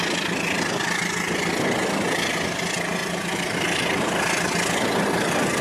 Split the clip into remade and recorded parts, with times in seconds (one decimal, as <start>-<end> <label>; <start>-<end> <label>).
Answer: 0.0-5.6 recorded